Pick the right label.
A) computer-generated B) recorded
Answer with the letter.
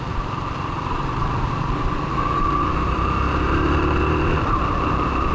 A